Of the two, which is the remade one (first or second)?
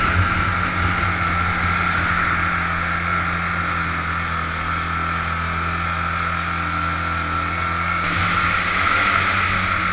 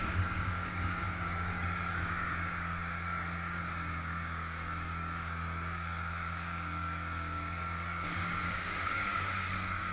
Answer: second